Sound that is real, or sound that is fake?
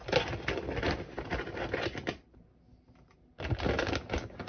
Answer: real